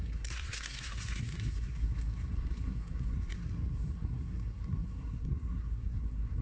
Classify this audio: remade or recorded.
remade